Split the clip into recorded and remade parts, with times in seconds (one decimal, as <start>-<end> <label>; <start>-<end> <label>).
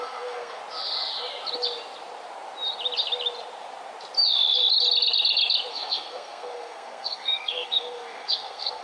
0.0-0.6 remade; 0.6-5.7 recorded; 5.7-8.8 remade